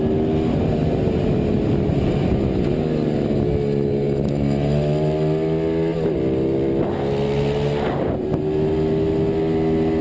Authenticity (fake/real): real